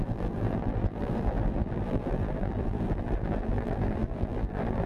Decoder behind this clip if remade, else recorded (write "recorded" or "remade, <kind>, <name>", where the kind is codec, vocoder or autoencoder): remade, vocoder, BigVGAN v2